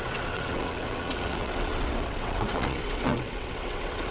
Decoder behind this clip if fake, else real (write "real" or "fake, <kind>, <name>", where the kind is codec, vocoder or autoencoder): fake, vocoder, WaveNeXt